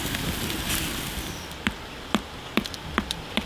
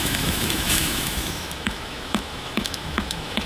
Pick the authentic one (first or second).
first